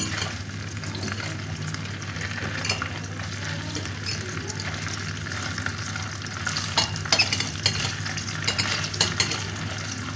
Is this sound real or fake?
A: real